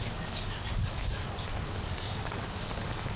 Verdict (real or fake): fake